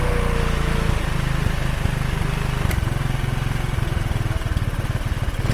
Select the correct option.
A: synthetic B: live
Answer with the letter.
B